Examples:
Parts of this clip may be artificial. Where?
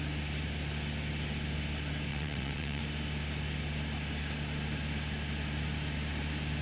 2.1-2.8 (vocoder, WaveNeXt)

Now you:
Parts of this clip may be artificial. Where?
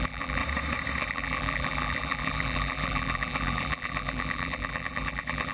0.0-0.4 (vocoder, BigVGAN v2); 1.0-5.5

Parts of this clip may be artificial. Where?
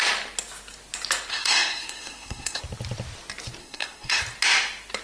1.3-2.6 (codec, SNAC); 3.6-4.2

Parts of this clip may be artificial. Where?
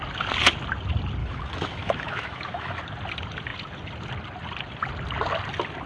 1.2-2.8 (autoencoder, DAC-VAE)